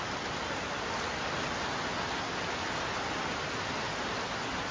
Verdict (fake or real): real